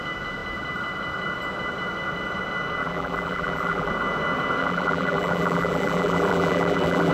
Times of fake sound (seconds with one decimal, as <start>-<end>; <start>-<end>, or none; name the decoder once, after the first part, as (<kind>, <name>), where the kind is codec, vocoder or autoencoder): 2.8-3.9 (vocoder, BigVGAN v2); 4.6-7.1